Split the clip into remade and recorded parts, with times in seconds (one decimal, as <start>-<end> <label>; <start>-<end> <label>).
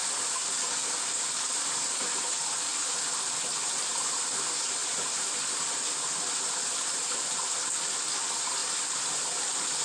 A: 0.0-9.8 recorded